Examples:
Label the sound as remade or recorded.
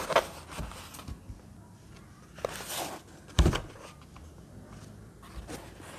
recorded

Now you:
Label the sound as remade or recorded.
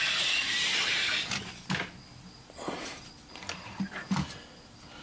recorded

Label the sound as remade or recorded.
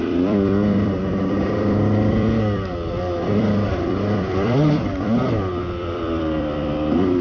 remade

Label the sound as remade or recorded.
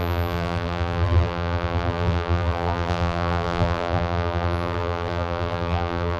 remade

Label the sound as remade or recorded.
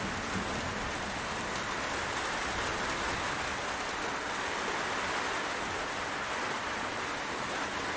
recorded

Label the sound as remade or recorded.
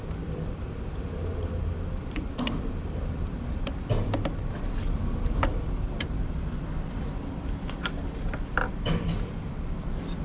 remade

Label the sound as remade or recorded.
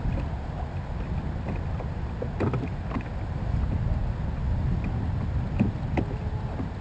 recorded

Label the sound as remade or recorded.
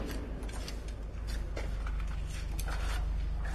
recorded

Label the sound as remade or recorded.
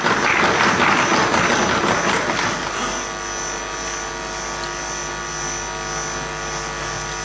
recorded